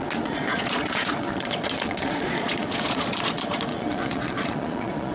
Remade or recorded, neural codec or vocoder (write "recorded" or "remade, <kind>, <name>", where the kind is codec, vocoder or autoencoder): remade, vocoder, Vocos